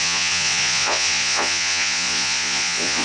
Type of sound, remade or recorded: remade